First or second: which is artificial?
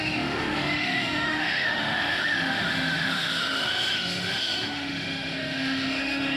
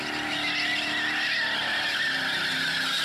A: first